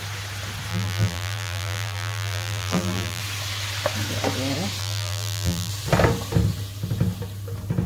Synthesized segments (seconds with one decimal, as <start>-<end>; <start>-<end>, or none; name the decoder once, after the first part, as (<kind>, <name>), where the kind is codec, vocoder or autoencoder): 0.7-3.2 (vocoder, BigVGAN v2); 4.8-5.7